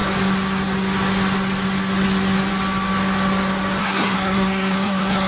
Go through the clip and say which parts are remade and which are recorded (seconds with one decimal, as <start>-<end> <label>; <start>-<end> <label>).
0.0-3.8 recorded; 3.8-5.3 remade